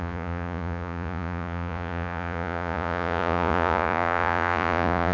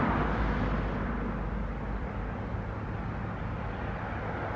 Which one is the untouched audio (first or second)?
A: second